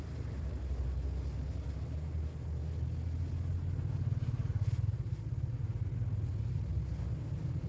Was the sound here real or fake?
real